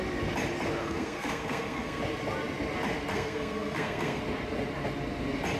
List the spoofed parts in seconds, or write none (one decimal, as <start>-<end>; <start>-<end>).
0.8-2.0; 3.1-4.2